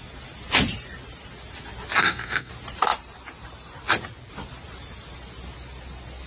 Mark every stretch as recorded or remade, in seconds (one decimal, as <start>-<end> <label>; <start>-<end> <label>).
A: 0.0-2.0 recorded; 2.0-2.5 remade; 2.5-6.3 recorded